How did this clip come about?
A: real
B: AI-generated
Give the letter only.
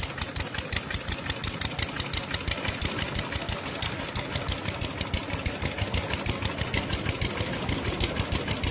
A